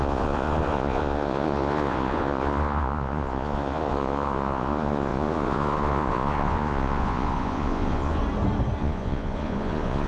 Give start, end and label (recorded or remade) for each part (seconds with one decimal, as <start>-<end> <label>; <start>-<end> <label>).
0.0-8.2 remade; 8.2-8.8 recorded; 8.8-10.1 remade